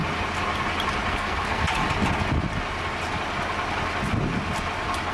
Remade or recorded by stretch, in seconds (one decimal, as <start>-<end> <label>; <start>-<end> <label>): 0.0-1.1 recorded; 1.1-1.8 remade; 1.8-5.1 recorded